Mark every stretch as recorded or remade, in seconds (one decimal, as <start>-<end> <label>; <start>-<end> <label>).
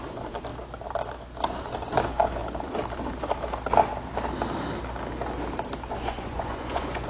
0.0-0.5 remade; 0.5-1.5 recorded; 1.5-2.4 remade; 2.4-5.9 recorded; 5.9-7.1 remade